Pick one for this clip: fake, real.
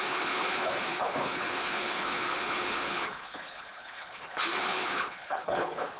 fake